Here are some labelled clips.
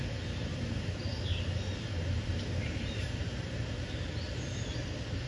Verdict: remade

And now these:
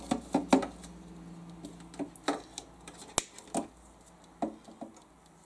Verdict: recorded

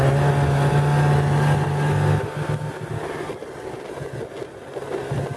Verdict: recorded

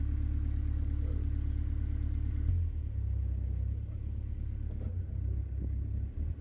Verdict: recorded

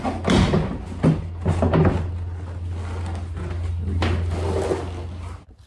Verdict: recorded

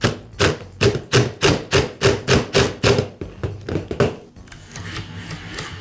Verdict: recorded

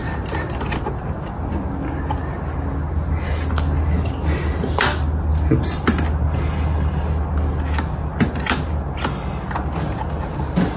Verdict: recorded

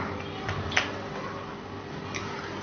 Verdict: recorded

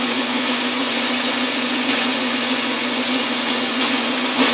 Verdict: remade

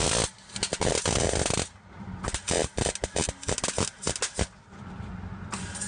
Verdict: recorded